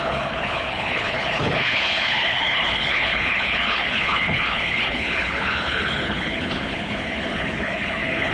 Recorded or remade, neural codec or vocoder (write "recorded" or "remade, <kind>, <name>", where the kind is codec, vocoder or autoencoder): remade, codec, HILCodec